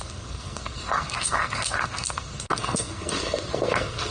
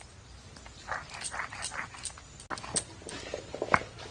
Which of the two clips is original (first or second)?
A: second